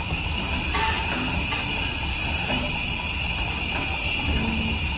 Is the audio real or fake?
real